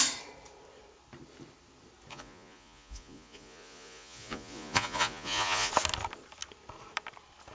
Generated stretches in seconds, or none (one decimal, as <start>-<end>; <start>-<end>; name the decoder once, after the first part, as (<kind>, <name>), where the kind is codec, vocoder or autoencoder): 2.1-5.7 (vocoder, Vocos)